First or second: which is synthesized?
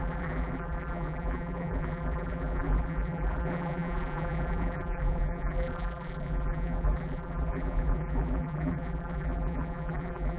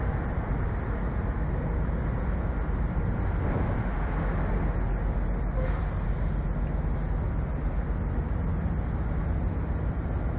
first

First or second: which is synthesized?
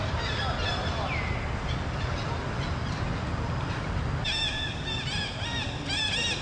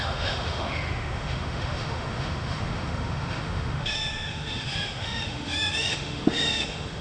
second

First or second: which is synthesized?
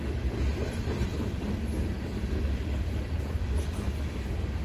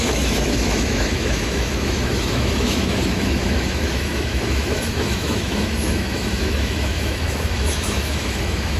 second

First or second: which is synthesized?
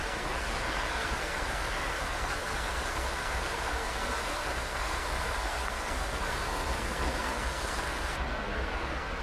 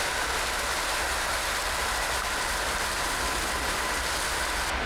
first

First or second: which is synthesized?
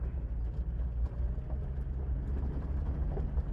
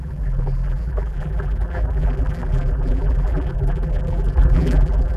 second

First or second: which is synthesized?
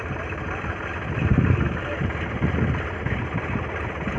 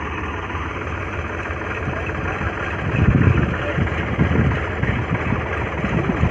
second